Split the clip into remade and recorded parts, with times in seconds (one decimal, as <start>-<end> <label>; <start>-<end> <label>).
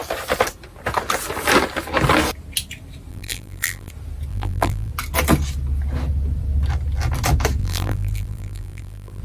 0.0-3.1 recorded; 3.1-3.9 remade; 3.9-4.3 recorded; 4.3-4.9 remade; 4.9-7.6 recorded; 7.6-9.2 remade